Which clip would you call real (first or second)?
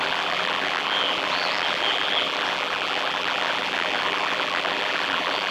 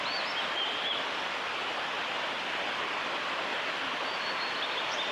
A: second